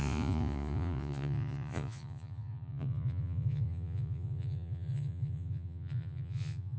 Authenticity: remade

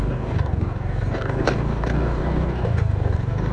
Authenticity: remade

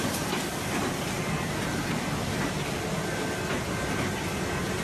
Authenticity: recorded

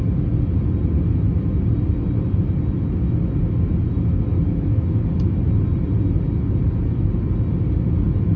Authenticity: recorded